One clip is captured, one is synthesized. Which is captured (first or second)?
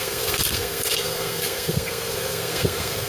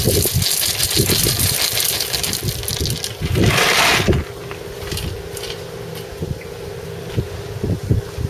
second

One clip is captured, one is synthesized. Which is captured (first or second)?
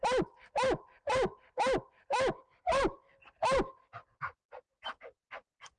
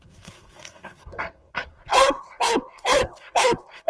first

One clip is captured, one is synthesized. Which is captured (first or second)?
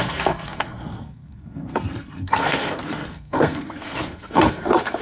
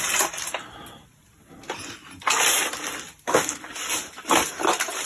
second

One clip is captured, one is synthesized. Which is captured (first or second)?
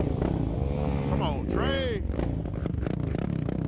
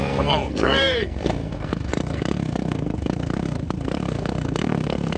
first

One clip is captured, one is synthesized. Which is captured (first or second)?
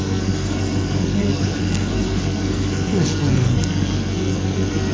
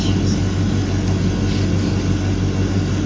second